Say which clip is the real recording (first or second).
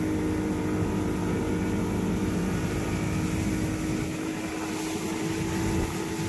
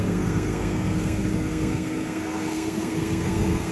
first